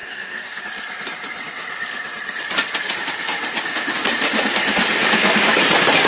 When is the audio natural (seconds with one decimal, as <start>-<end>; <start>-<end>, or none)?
0.6-6.1